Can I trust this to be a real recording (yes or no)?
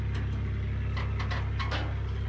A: yes